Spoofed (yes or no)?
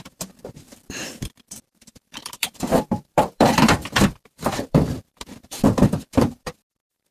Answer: yes